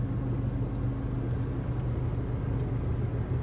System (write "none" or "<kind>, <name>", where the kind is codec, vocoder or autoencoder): none